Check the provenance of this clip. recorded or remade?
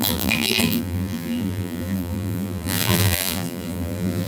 remade